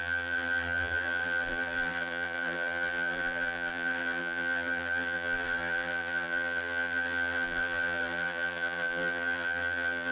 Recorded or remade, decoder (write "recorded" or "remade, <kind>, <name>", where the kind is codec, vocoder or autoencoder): remade, vocoder, BigVGAN v2